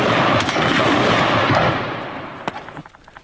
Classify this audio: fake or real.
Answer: real